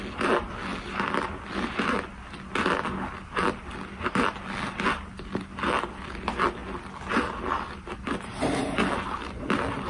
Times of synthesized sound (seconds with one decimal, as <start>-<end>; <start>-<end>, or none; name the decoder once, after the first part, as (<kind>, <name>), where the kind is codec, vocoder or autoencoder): none